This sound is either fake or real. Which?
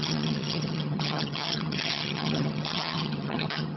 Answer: fake